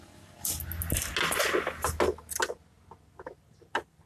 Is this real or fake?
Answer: real